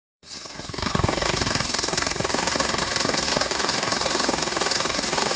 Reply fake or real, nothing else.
fake